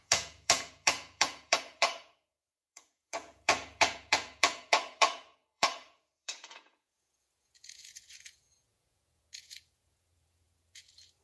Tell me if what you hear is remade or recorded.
remade